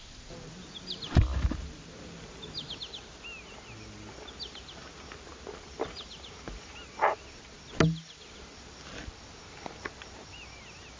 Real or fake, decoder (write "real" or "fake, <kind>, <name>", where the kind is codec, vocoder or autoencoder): real